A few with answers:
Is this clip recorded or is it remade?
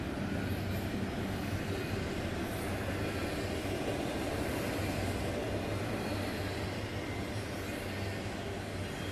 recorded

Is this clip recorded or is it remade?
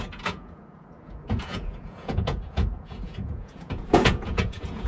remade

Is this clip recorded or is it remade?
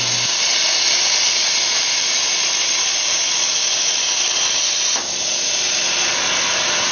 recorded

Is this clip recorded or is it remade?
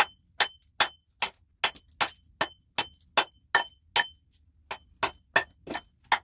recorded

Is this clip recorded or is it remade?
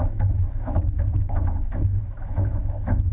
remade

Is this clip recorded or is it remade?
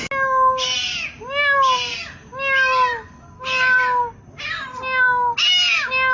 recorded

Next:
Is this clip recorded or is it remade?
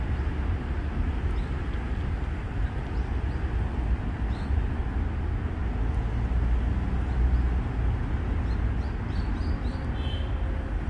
recorded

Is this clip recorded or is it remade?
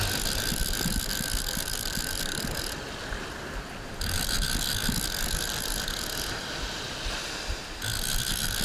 recorded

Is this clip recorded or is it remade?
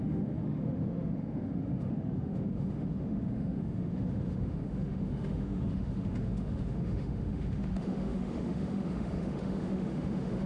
remade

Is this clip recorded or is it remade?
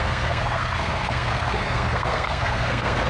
remade